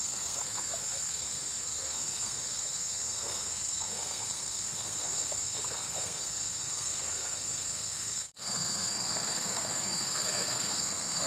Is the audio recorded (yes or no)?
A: no